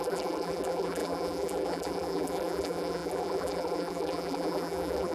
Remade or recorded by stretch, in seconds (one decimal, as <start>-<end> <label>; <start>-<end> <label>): 0.0-5.1 remade